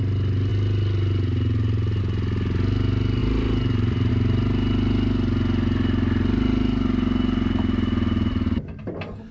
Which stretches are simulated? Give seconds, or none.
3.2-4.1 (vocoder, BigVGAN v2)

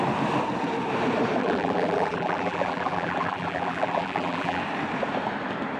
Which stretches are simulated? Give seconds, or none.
1.4-4.6 (vocoder, BigVGAN v2)

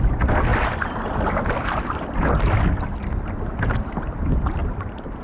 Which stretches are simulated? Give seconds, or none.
4.6-5.2 (vocoder, BigVGAN v2)

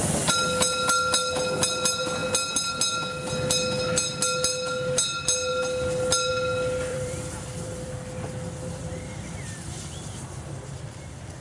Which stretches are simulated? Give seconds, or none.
6.9-7.9 (vocoder, BigVGAN v2)